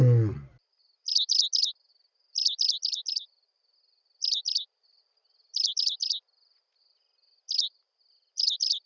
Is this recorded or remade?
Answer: recorded